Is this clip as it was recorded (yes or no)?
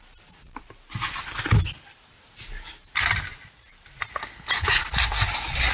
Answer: yes